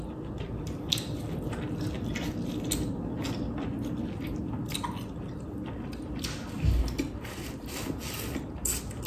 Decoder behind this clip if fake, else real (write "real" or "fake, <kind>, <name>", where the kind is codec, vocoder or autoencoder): real